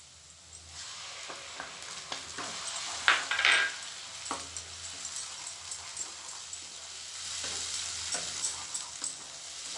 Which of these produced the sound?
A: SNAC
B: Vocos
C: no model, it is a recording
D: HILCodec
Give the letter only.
C